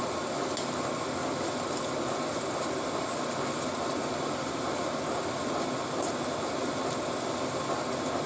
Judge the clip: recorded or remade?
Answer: recorded